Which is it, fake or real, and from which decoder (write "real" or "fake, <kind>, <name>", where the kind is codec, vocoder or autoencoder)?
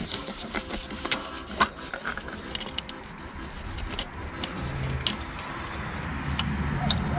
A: real